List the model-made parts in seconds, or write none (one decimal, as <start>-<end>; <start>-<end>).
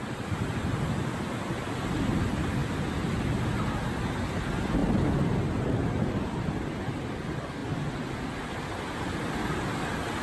4.8-6.7